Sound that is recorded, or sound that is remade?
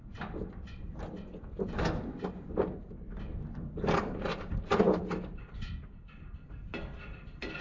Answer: recorded